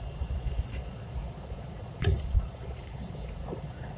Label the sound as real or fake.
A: fake